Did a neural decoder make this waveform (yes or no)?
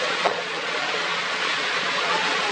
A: yes